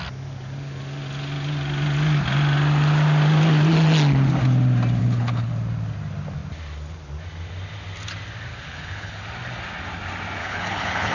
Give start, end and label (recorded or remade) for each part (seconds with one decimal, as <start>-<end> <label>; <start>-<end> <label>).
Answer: 0.0-5.0 recorded; 5.0-5.5 remade; 5.5-8.5 recorded; 8.5-9.2 remade; 9.2-10.4 recorded; 10.4-11.1 remade